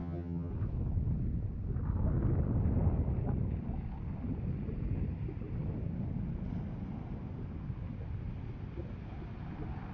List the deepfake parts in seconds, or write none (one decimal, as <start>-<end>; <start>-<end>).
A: 0.0-0.5